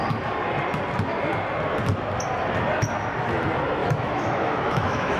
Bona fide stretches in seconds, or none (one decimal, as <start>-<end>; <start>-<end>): 0.0-3.8